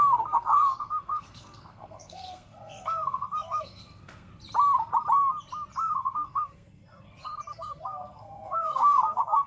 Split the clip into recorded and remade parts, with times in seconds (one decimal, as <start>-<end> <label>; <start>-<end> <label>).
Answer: 0.0-4.3 remade; 4.3-6.0 recorded; 6.0-9.5 remade